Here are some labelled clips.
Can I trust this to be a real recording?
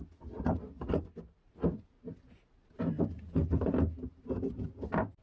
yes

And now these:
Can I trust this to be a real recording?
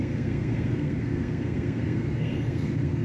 no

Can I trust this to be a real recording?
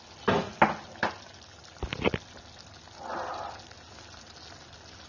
yes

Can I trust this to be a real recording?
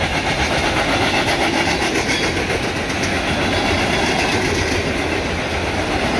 yes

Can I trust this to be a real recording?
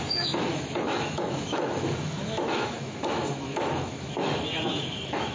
no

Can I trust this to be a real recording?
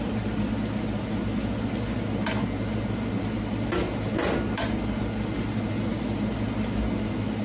yes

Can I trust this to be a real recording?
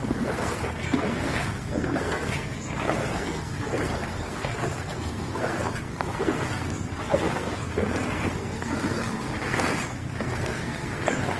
no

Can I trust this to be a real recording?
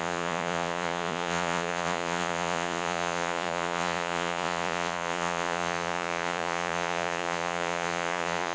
no